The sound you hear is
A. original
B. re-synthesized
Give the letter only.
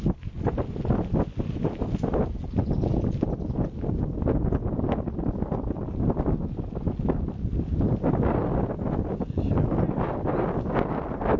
A